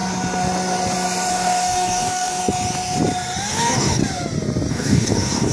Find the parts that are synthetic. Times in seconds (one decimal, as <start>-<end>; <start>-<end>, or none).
1.3-2.4; 3.5-4.0; 4.7-5.5

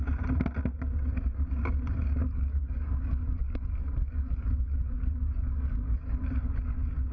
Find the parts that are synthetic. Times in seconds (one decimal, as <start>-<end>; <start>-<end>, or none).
2.2-6.5

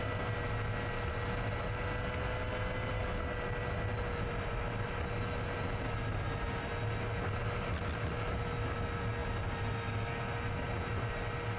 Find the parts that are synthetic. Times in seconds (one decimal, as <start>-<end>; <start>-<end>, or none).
none

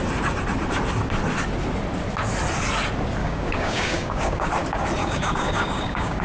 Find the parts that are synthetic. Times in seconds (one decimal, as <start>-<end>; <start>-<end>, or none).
3.2-4.5; 5.0-6.2

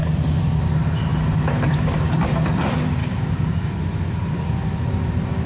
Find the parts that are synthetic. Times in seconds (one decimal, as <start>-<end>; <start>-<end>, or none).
3.0-3.7

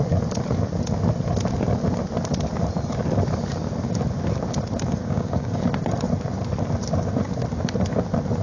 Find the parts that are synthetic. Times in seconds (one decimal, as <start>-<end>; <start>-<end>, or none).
5.0-5.6

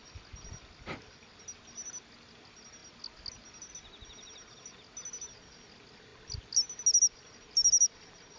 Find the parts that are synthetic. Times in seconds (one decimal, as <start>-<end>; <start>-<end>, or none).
none